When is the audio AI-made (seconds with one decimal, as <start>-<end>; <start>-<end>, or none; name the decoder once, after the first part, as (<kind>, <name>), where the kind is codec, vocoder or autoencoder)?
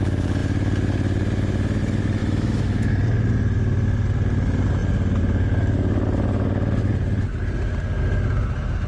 2.2-2.9 (autoencoder, DAC-VAE)